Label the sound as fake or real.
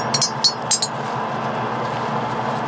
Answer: real